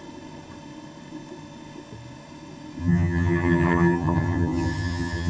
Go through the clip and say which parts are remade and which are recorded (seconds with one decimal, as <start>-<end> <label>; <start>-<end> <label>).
0.0-2.8 recorded; 2.8-5.3 remade